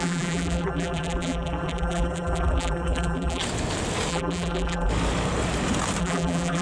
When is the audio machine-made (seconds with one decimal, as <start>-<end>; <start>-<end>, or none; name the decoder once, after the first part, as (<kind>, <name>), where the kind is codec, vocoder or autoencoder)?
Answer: 0.0-3.4 (vocoder, BigVGAN v2); 4.1-4.9; 6.0-6.6